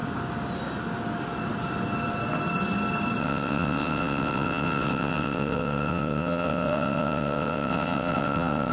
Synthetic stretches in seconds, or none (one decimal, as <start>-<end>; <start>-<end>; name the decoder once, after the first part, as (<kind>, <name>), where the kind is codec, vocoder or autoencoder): 3.2-8.7 (vocoder, WaveNeXt)